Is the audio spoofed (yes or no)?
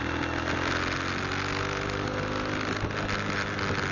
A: no